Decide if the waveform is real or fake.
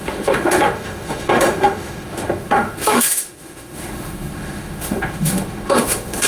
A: fake